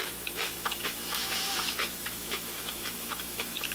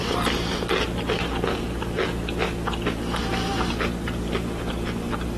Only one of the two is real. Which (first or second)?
second